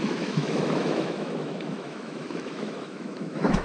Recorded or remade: remade